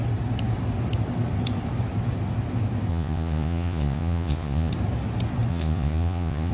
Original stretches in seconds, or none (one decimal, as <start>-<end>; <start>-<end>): 0.0-2.9; 4.7-5.5